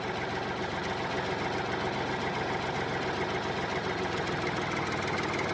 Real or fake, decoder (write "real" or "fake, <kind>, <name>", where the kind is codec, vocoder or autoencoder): real